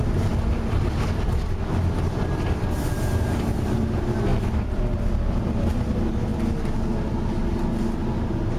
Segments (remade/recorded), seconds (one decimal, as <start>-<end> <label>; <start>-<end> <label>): 0.0-4.3 recorded; 4.3-5.7 remade; 5.7-8.6 recorded